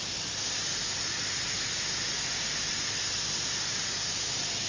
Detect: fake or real real